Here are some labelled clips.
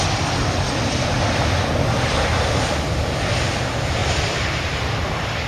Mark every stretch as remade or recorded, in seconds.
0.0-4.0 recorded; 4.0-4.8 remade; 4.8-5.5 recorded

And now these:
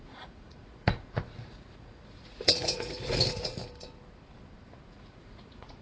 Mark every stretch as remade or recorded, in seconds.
0.0-3.6 remade; 3.6-4.9 recorded; 4.9-5.8 remade

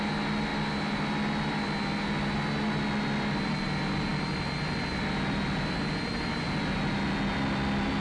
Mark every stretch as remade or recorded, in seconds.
0.0-8.0 recorded